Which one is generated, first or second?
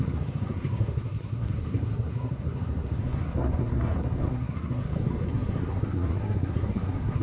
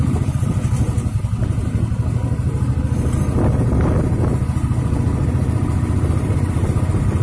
first